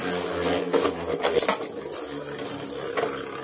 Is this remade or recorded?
recorded